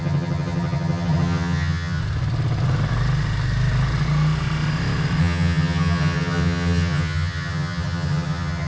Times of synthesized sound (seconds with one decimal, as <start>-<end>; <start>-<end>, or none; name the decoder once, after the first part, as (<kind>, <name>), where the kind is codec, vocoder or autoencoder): 0.0-2.0 (vocoder, HiFi-GAN); 5.2-8.7